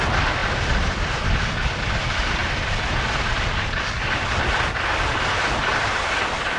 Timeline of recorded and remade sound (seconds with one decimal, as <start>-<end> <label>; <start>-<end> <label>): 0.0-6.6 recorded